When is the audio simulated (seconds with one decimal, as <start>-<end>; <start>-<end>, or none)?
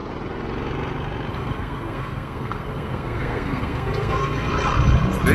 1.3-4.5